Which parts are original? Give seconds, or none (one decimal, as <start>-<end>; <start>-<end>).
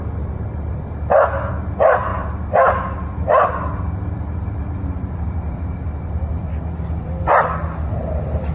0.0-2.1; 7.2-8.5